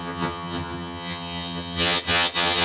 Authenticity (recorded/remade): remade